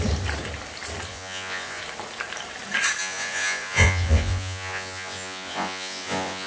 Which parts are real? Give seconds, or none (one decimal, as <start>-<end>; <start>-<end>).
0.0-1.1; 1.8-3.0